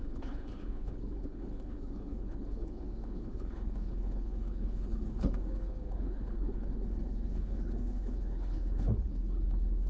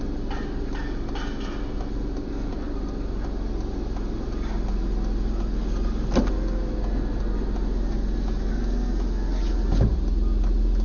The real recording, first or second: second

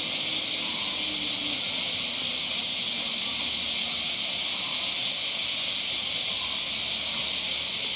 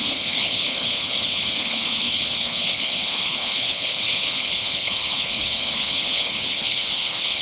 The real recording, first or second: first